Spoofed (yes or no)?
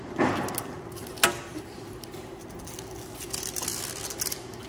no